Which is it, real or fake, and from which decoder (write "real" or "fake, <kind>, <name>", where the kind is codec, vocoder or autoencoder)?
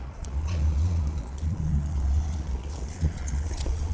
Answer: fake, vocoder, Vocos